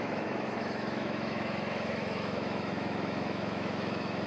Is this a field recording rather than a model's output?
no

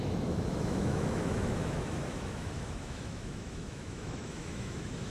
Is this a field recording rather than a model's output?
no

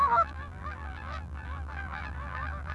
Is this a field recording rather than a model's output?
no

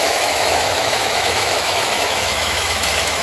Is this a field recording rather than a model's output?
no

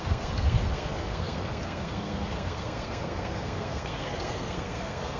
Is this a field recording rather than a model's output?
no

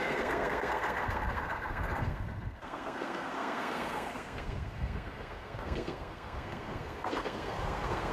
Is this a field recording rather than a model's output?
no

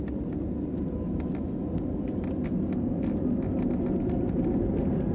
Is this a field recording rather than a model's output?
yes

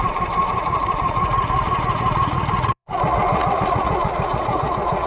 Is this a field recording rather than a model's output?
no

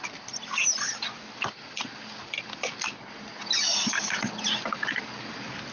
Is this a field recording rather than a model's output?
yes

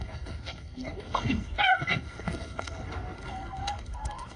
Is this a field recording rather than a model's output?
no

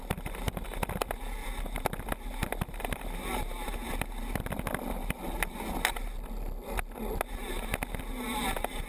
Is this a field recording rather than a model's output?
yes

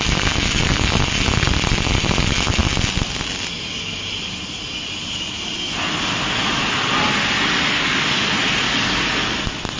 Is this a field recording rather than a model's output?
yes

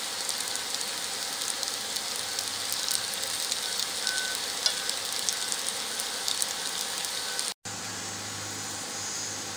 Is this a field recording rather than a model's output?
yes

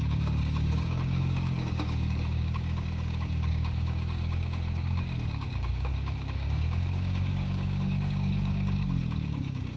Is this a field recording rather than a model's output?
no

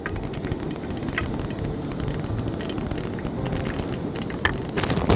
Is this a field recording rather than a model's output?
yes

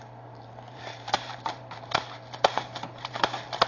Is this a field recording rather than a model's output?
no